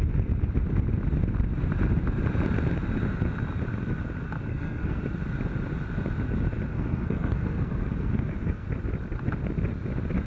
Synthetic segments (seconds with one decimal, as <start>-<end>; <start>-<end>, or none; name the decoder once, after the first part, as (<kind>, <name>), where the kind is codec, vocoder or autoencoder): 4.5-5.0 (codec, SNAC); 6.7-8.7